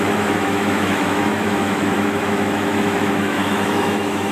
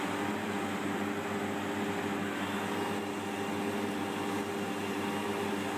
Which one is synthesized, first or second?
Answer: first